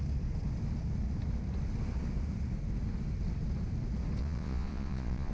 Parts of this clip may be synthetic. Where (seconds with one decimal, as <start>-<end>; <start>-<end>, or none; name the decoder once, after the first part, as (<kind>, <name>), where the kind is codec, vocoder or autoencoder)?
4.2-5.3 (vocoder, Vocos)